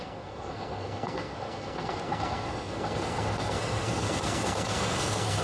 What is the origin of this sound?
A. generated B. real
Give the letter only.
A